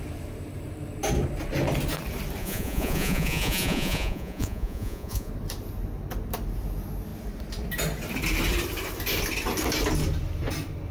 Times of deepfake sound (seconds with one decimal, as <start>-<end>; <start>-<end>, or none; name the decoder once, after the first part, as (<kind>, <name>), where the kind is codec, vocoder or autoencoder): 2.4-5.3 (vocoder, Vocos)